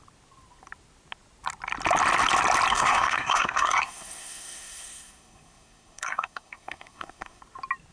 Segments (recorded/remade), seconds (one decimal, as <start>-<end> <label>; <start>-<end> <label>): 0.0-2.7 recorded; 2.7-7.4 remade; 7.4-7.9 recorded

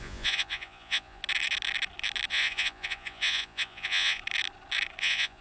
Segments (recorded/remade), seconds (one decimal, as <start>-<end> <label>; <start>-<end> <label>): 0.0-1.2 remade; 1.2-2.3 recorded; 2.3-4.2 remade; 4.2-5.0 recorded; 5.0-5.4 remade

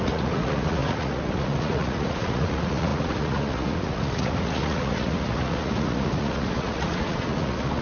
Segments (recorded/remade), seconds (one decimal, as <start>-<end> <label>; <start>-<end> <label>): 0.0-7.8 remade

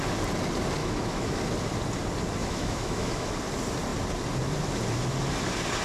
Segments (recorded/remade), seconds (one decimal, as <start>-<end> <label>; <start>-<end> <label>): 0.0-0.8 recorded; 0.8-1.4 remade; 1.4-2.4 recorded; 2.4-3.3 remade; 3.3-5.8 recorded

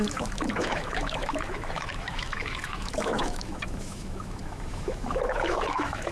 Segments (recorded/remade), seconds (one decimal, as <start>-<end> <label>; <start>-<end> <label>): 0.0-6.1 remade

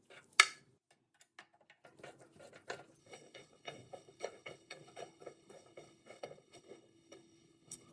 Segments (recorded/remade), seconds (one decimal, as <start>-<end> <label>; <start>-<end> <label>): 0.0-3.0 recorded; 3.0-7.9 remade